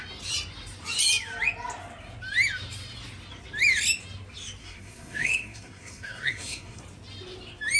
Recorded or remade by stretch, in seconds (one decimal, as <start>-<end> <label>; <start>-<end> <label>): 0.0-4.6 recorded; 4.6-6.8 remade; 6.8-7.8 recorded